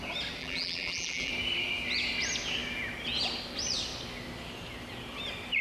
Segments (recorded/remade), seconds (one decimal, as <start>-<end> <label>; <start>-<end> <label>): 0.0-0.4 recorded; 0.4-1.3 remade; 1.3-5.6 recorded